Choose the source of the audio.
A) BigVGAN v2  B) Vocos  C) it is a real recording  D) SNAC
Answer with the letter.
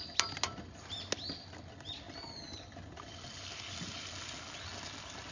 C